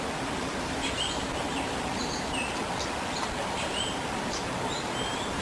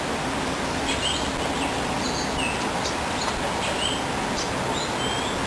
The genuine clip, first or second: second